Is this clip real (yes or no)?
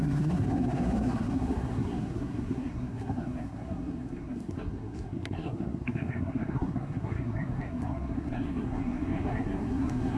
no